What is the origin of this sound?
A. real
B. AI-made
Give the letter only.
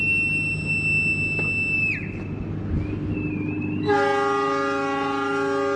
A